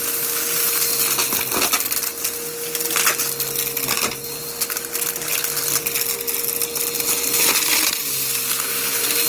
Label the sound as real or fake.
real